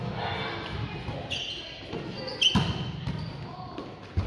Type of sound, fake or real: real